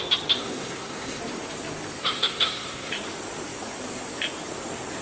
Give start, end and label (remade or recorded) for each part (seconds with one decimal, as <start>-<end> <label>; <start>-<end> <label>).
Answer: 0.0-0.4 recorded; 0.4-1.2 remade; 1.2-2.0 recorded; 2.0-2.9 remade; 2.9-5.0 recorded